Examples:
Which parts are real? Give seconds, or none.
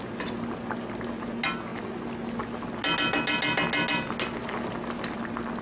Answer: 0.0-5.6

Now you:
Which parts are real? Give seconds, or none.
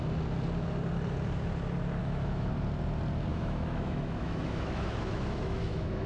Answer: 0.0-2.0; 2.5-3.3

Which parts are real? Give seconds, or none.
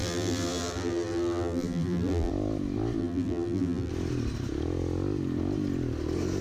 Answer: 2.3-3.0; 3.9-6.4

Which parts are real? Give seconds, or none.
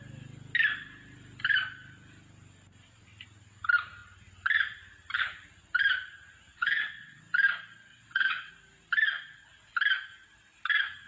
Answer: 0.0-6.5; 7.2-7.9; 8.5-11.1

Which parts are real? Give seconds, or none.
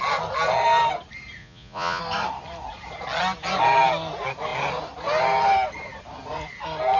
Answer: 0.0-1.4; 2.0-7.0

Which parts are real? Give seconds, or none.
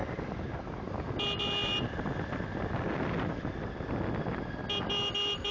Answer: 0.0-5.5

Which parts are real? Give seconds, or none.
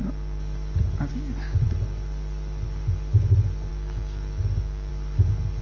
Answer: 0.0-3.7; 4.9-5.6